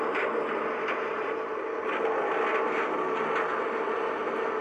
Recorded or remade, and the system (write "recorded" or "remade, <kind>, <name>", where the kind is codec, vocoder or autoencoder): recorded